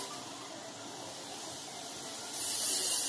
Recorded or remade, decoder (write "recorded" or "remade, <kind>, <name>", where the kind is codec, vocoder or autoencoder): recorded